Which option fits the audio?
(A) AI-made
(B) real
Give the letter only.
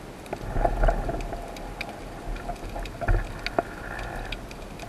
B